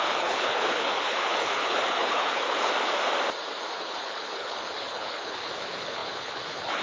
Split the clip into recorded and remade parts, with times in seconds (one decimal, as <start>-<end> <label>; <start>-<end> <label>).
0.0-2.7 remade; 2.7-3.8 recorded; 3.8-6.8 remade